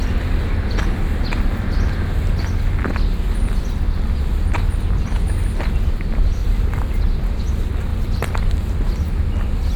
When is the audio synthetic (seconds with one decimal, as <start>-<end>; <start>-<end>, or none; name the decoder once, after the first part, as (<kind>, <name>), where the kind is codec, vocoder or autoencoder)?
6.4-7.0 (vocoder, BigVGAN v2); 7.9-8.5